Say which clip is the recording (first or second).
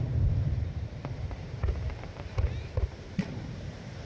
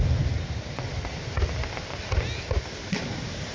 second